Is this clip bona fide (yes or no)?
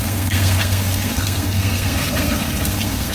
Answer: no